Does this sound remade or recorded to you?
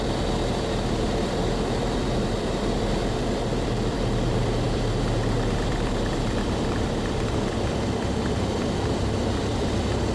remade